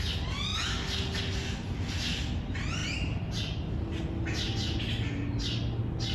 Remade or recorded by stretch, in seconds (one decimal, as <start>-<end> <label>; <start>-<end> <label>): 0.0-6.1 recorded